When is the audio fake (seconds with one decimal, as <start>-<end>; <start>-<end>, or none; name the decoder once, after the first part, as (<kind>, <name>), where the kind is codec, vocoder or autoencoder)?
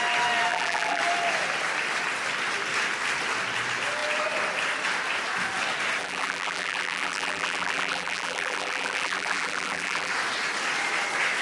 0.5-1.0 (vocoder, BigVGAN v2); 6.0-10.1